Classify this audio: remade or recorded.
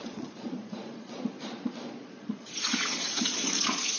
remade